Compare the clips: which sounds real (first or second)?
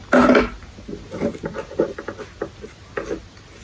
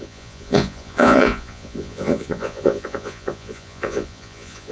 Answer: first